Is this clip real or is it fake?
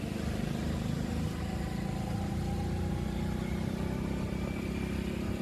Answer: real